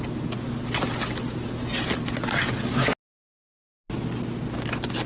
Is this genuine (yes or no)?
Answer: yes